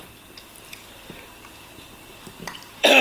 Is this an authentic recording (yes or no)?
no